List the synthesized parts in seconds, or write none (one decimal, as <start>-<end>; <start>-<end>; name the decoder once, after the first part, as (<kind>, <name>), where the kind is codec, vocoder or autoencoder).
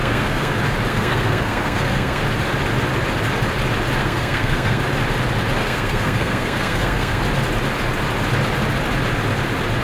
0.0-0.5 (codec, SNAC); 0.9-2.2; 4.0-4.8; 5.6-7.2